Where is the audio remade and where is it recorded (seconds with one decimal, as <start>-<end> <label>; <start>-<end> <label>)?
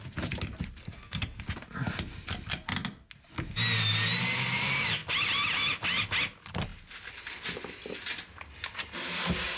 0.0-0.8 recorded; 0.8-1.4 remade; 1.4-9.6 recorded